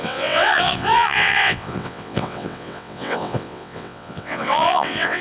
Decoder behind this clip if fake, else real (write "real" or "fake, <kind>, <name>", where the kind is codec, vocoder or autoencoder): fake, vocoder, WaveNeXt